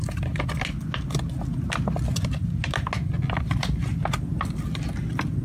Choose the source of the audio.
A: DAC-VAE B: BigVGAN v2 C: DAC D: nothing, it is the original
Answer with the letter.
D